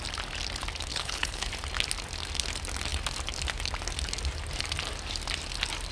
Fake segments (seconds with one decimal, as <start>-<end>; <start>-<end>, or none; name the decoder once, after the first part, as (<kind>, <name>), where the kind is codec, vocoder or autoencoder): 0.9-1.5 (codec, HILCodec)